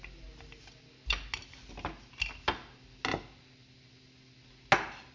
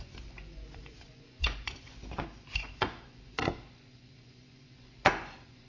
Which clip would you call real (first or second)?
first